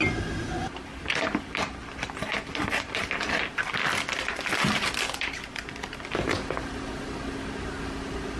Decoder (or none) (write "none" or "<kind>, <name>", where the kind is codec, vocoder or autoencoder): none